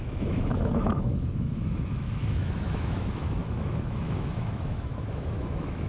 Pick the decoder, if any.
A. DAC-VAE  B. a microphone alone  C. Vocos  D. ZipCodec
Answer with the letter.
A